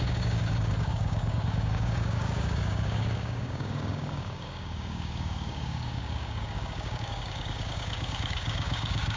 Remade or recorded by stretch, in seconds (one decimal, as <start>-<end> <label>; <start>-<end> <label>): 0.0-9.2 remade